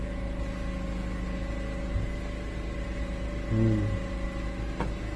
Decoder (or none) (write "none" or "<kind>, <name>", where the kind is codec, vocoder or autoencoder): none